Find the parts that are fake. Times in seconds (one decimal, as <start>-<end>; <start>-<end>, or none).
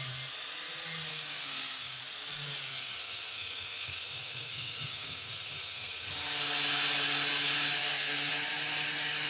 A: 1.1-2.0; 2.7-6.1; 7.8-8.3